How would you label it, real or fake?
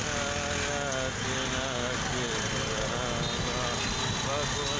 real